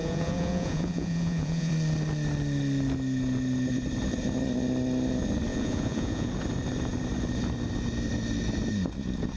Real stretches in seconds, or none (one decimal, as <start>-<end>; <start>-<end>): 1.7-5.5; 6.3-9.4

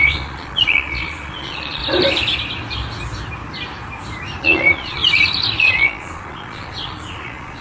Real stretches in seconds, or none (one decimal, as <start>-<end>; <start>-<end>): 1.8-4.4; 5.0-5.6

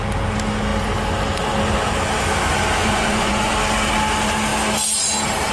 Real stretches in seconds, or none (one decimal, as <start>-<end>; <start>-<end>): 0.0-2.8; 3.5-5.5

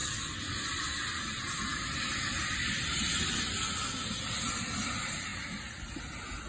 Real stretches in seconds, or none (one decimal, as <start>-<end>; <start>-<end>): 0.0-6.5

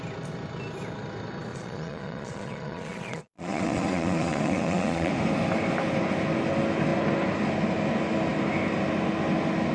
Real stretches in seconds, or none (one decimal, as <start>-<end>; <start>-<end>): 0.0-1.5; 5.1-9.7

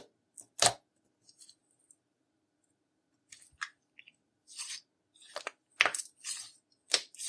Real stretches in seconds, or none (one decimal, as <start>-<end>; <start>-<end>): 0.0-7.3

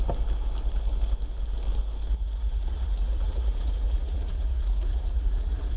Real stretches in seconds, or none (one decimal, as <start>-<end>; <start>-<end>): 0.0-2.1

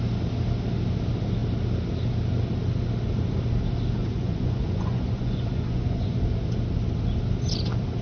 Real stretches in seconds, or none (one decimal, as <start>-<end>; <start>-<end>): 0.0-4.0; 6.2-8.0